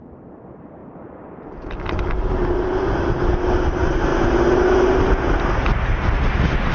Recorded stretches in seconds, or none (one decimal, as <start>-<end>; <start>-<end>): 0.0-6.7